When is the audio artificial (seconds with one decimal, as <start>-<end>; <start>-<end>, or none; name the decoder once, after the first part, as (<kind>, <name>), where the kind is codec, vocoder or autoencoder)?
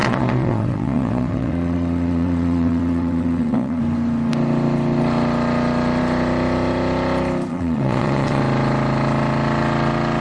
0.0-3.8 (vocoder, WaveNeXt); 7.5-8.4